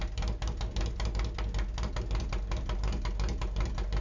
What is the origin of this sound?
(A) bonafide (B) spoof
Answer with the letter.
A